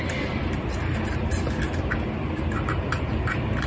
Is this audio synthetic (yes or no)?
no